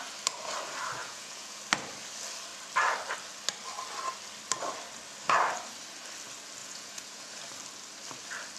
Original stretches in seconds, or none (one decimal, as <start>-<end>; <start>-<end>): 0.0-1.0; 1.6-6.6; 7.4-8.6